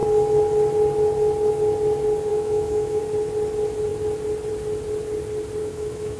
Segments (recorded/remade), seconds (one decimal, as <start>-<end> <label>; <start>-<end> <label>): 0.0-2.3 recorded; 2.3-3.0 remade; 3.0-5.6 recorded; 5.6-6.2 remade